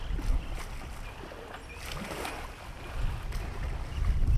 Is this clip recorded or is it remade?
recorded